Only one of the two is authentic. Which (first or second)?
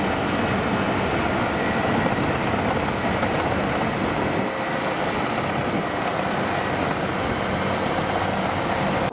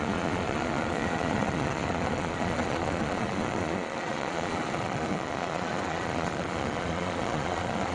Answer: first